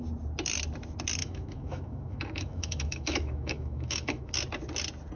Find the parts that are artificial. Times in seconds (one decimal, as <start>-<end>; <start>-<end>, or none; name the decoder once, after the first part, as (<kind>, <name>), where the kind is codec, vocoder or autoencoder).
1.2-4.3 (autoencoder, DAC-VAE)